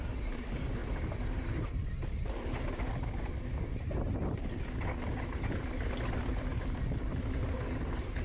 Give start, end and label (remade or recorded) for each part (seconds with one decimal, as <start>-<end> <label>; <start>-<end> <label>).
0.0-8.2 recorded